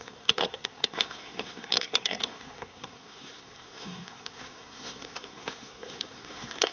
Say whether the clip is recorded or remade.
remade